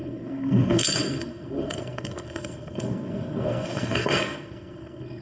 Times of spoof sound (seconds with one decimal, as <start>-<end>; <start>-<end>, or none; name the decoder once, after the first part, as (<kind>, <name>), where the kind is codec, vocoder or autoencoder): 0.0-5.2 (codec, SNAC)